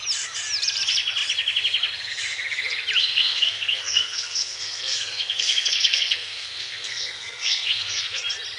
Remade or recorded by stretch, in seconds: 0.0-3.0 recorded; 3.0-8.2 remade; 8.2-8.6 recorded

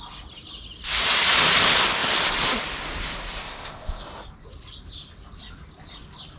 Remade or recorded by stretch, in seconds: 0.0-3.4 recorded; 3.4-4.0 remade; 4.0-6.4 recorded

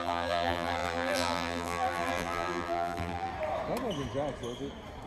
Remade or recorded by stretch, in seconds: 0.0-3.3 remade; 3.3-5.1 recorded

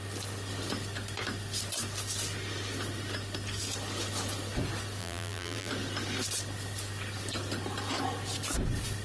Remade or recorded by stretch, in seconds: 0.0-5.0 recorded; 5.0-5.7 remade; 5.7-9.0 recorded

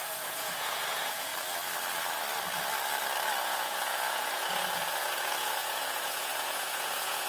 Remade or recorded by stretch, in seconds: 0.0-1.3 remade; 1.3-3.4 recorded; 3.4-7.3 remade

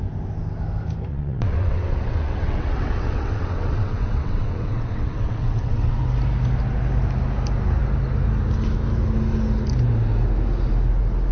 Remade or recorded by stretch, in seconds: 0.0-1.1 recorded; 1.1-6.0 remade; 6.0-11.3 recorded